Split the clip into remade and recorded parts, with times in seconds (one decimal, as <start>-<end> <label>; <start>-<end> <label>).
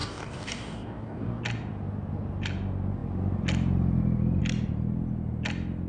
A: 0.0-1.4 remade; 1.4-5.9 recorded